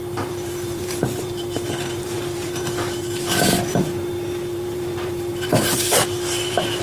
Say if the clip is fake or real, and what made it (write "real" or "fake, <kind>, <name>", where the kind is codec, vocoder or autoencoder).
fake, vocoder, BigVGAN v2